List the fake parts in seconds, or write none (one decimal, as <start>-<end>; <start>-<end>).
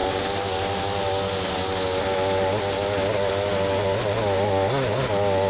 none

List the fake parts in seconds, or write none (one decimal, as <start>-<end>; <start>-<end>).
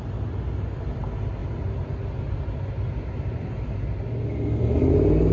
none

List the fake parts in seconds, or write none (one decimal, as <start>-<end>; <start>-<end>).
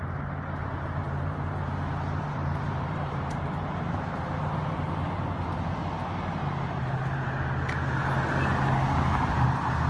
0.6-4.9; 6.4-7.2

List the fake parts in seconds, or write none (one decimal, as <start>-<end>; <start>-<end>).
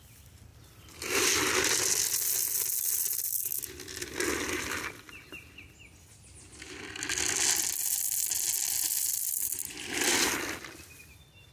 none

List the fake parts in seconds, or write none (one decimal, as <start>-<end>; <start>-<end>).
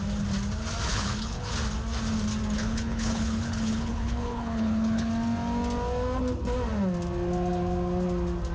0.9-1.5; 2.6-5.1